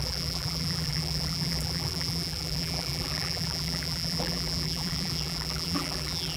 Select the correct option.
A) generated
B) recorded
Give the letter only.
A